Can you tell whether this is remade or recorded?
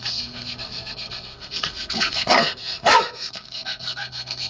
remade